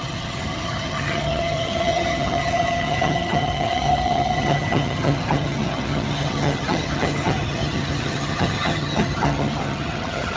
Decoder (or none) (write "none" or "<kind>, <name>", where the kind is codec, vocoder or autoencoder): vocoder, HiFi-GAN